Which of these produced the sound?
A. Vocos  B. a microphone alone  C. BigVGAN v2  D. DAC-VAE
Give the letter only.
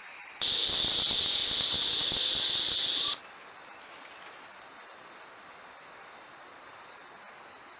B